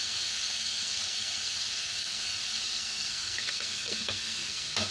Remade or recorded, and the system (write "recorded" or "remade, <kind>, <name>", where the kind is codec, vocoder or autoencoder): remade, codec, SNAC